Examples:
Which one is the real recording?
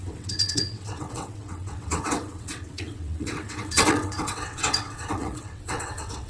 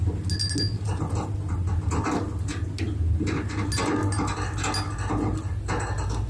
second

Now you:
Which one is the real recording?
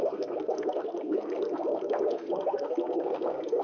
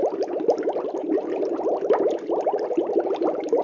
second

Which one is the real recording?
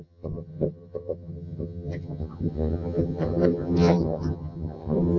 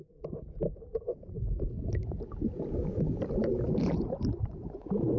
second